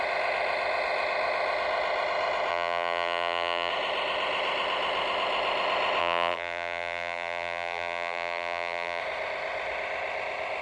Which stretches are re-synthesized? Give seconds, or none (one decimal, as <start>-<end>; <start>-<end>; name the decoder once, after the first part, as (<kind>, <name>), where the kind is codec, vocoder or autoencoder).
2.5-3.7 (vocoder, BigVGAN v2); 6.0-9.0